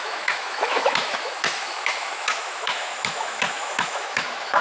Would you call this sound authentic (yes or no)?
no